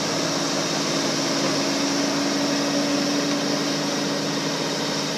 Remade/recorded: recorded